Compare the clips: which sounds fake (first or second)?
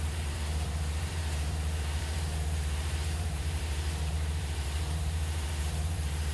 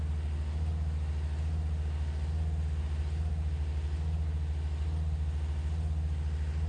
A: first